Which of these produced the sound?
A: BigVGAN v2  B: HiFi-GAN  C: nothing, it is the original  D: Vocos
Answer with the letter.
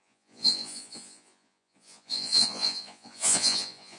D